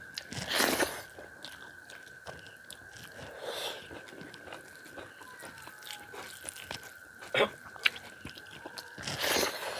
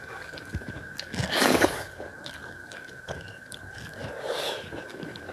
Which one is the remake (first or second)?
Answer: second